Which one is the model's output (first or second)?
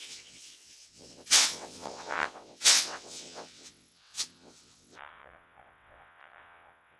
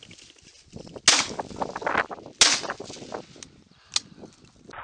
first